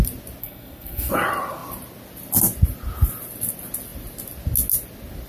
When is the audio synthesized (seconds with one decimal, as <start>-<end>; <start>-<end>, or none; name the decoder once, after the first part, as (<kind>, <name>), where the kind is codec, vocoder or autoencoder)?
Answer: 0.4-1.1 (codec, SNAC)

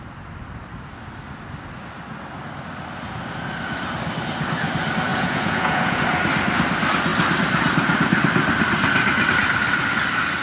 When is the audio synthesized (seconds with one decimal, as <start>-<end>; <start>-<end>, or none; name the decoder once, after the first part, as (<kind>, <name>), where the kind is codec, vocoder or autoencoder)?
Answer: 5.1-6.0 (vocoder, Vocos)

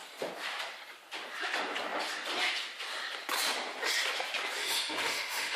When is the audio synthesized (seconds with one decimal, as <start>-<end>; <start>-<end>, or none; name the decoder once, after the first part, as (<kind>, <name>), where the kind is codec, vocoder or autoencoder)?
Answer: 4.6-5.6 (autoencoder, DAC-VAE)

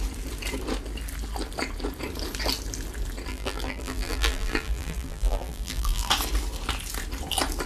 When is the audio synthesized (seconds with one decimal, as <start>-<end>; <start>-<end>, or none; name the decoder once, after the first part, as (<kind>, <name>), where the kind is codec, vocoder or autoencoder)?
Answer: 3.3-6.1 (vocoder, BigVGAN v2)

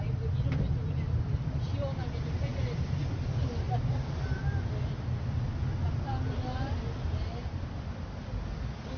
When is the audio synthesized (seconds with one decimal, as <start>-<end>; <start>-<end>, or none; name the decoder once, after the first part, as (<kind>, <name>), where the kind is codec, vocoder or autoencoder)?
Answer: none